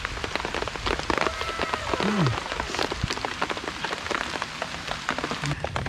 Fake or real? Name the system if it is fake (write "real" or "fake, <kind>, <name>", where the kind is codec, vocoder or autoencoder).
real